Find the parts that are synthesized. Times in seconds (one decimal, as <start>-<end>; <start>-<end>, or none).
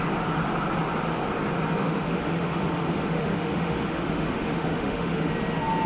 1.8-5.3